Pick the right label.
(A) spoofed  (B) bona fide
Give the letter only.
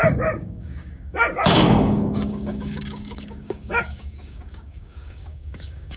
A